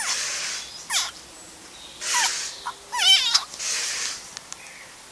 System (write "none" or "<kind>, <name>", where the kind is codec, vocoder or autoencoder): none